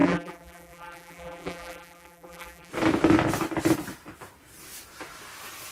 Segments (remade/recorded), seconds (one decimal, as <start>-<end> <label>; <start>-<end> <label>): 0.0-2.7 remade; 2.7-5.7 recorded